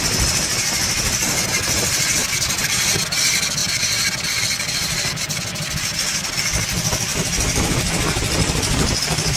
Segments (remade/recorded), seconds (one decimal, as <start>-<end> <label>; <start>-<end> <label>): 0.0-2.2 recorded; 2.2-3.0 remade; 3.0-7.1 recorded; 7.1-7.9 remade; 7.9-9.4 recorded